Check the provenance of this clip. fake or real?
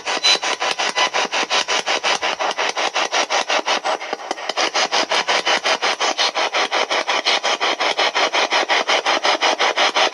real